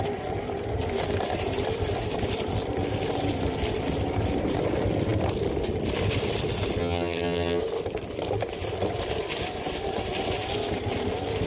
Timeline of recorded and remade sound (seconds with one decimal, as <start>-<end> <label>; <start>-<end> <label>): 0.0-6.8 recorded; 6.8-7.6 remade; 7.6-11.5 recorded